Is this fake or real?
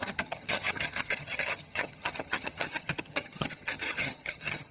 fake